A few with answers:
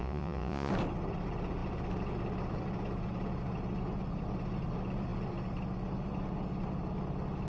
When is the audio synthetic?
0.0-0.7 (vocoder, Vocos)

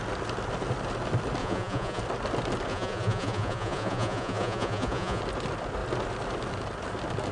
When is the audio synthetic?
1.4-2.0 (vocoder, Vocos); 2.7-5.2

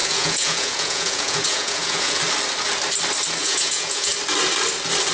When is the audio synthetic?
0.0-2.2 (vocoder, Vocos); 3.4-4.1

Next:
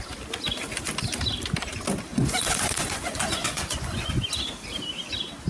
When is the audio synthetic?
2.1-4.1 (vocoder, Vocos)